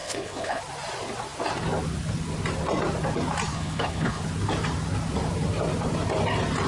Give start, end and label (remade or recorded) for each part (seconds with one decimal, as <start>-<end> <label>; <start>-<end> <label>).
0.0-0.6 remade; 0.6-3.5 recorded; 3.5-4.2 remade; 4.2-6.7 recorded